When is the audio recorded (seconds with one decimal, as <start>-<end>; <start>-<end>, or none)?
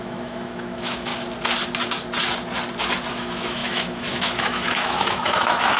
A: 1.1-3.1